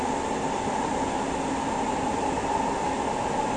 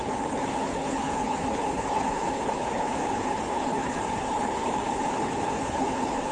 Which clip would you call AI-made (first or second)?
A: second